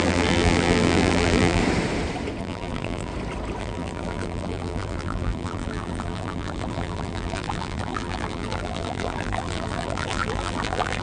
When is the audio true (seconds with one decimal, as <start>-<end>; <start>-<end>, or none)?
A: 1.6-2.4; 3.1-3.6